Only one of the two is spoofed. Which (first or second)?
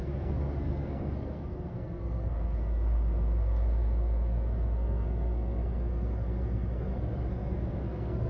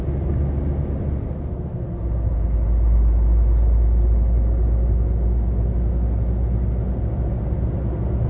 first